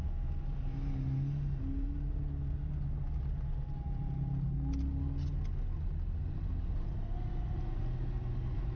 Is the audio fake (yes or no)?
no